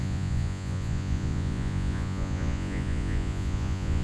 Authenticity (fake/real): fake